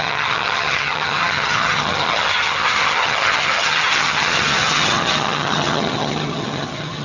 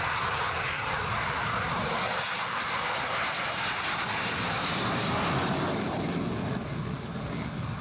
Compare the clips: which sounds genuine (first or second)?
second